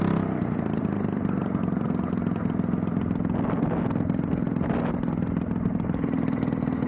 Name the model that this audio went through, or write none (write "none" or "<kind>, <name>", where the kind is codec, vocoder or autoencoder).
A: none